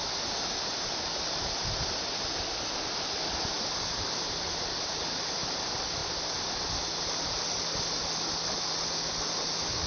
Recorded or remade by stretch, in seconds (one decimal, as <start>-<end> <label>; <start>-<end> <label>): 0.0-9.9 recorded